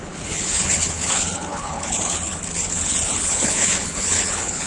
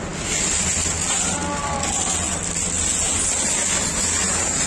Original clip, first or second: second